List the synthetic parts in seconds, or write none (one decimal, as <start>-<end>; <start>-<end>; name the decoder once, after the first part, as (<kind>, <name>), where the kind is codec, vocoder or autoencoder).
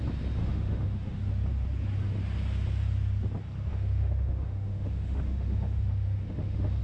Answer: 0.4-1.2 (autoencoder, DAC-VAE); 3.7-6.8